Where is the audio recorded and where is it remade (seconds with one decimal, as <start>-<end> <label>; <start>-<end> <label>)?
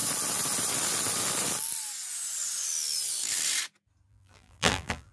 0.0-4.1 recorded; 4.1-5.1 remade